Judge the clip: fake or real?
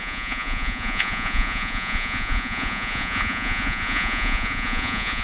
fake